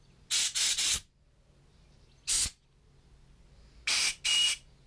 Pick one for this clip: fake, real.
real